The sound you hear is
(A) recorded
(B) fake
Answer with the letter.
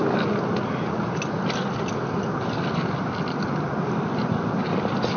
A